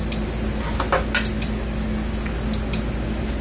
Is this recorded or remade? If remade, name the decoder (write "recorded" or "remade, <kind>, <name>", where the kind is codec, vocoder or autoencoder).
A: recorded